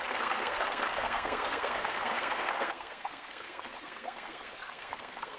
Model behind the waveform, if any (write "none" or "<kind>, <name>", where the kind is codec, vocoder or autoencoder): codec, SNAC